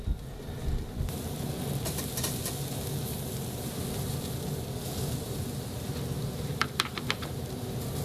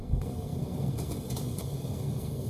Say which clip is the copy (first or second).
second